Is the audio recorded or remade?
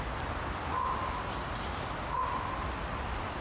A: recorded